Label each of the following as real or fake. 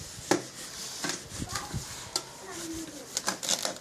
real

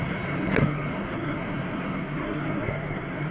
fake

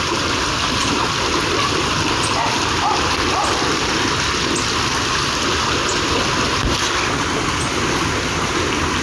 real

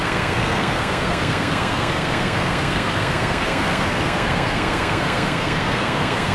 fake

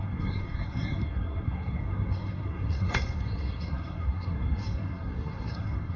fake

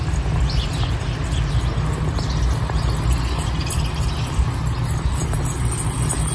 real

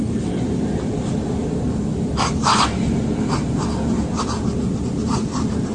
real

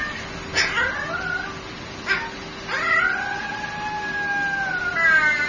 real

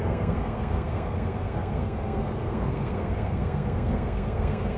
fake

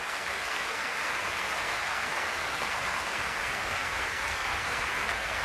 fake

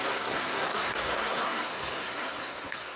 fake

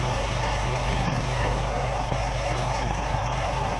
fake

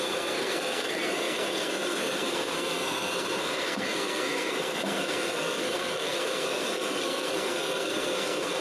fake